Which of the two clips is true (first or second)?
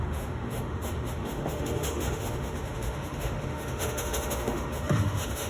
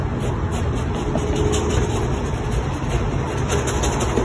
second